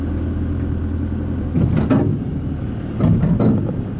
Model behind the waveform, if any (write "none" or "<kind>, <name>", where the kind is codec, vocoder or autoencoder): none